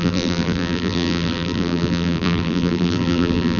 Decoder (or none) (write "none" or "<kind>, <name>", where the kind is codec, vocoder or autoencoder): vocoder, BigVGAN v2